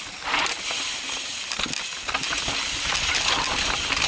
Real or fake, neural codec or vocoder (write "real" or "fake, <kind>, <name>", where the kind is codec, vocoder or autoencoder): real